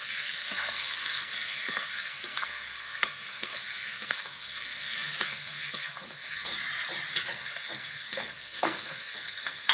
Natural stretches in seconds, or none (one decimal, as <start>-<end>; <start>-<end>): 6.5-7.1